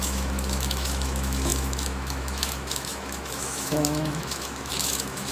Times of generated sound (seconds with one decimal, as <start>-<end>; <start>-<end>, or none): 0.0-5.3